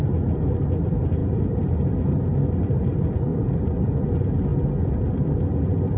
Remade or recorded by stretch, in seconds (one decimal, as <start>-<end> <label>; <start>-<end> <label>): 0.0-6.0 recorded